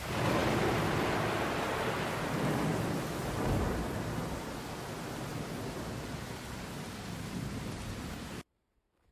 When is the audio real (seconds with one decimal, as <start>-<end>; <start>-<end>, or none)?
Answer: 0.0-9.1